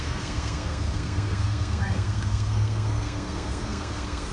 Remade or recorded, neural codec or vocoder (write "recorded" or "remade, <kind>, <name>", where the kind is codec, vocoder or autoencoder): remade, codec, SNAC